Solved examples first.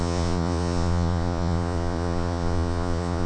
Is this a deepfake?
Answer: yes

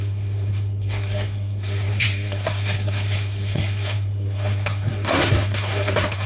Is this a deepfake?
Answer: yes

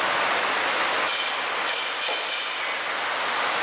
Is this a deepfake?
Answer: no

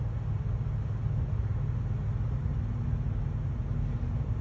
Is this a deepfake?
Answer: no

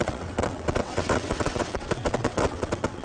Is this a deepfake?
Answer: yes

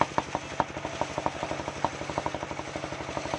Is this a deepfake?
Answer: no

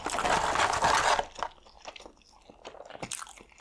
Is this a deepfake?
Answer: no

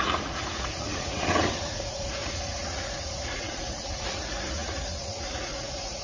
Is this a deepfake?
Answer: yes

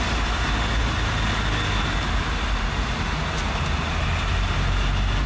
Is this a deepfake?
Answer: no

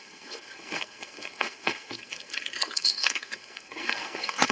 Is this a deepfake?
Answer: yes